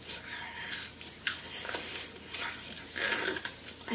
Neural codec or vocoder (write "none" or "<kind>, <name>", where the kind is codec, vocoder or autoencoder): none